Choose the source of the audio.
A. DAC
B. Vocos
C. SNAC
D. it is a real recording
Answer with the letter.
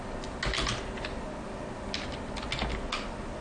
D